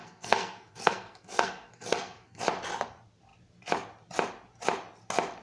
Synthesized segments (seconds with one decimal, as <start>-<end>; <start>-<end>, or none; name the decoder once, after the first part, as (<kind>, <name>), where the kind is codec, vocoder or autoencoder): 0.0-2.4 (codec, SNAC)